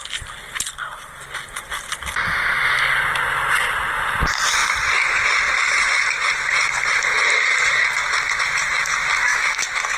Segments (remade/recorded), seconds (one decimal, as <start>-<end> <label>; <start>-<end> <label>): 0.0-9.3 recorded; 9.3-10.0 remade